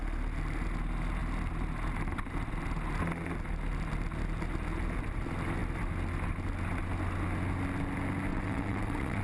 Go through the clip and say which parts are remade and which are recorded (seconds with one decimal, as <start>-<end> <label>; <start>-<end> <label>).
0.0-8.3 recorded; 8.3-9.2 remade

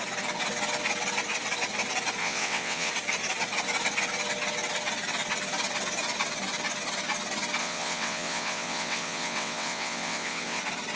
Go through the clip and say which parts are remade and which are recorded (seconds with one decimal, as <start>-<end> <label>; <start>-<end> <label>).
0.0-2.2 recorded; 2.2-2.9 remade; 2.9-7.6 recorded; 7.6-10.6 remade; 10.6-11.0 recorded

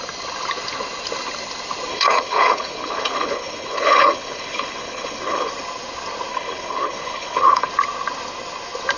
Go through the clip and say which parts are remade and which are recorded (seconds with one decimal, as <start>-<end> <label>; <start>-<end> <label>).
0.0-1.9 recorded; 1.9-5.5 remade; 5.5-6.3 recorded; 6.3-7.7 remade; 7.7-9.0 recorded

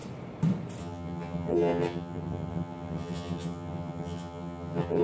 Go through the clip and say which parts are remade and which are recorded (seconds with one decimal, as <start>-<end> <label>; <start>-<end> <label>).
0.0-0.8 recorded; 0.8-5.0 remade

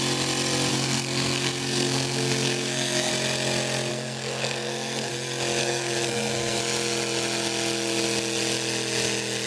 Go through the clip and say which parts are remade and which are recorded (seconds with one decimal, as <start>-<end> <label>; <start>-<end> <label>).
0.0-0.7 recorded; 0.7-3.1 remade; 3.1-3.9 recorded; 3.9-5.1 remade; 5.1-5.6 recorded; 5.6-6.6 remade; 6.6-9.5 recorded

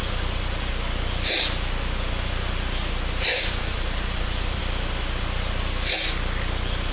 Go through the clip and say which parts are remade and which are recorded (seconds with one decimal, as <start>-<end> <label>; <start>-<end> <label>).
0.0-3.3 recorded; 3.3-4.6 remade; 4.6-6.9 recorded

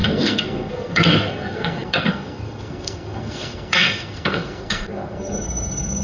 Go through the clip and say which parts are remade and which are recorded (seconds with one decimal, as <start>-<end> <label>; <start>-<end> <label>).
0.0-6.0 remade

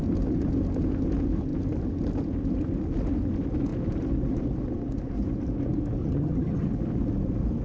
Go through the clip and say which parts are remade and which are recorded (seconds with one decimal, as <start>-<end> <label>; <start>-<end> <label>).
0.0-6.0 recorded; 6.0-6.7 remade; 6.7-7.6 recorded